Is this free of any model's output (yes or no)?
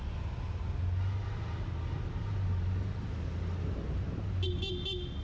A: yes